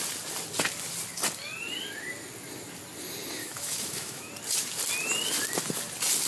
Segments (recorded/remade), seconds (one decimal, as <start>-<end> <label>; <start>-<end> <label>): 0.0-3.4 recorded; 3.4-4.3 remade; 4.3-6.3 recorded